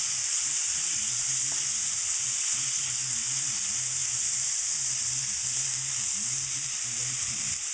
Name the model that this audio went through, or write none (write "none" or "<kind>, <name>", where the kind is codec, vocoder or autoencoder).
none